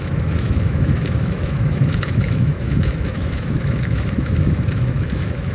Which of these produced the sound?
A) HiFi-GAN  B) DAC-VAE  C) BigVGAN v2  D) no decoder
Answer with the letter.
B